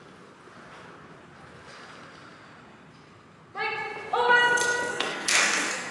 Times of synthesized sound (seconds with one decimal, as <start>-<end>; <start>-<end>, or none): 4.9-5.9